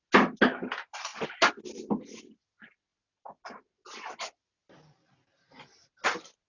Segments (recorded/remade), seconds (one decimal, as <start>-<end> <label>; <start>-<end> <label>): 0.0-6.5 recorded